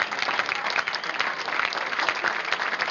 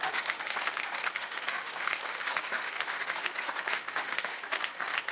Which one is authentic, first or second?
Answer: first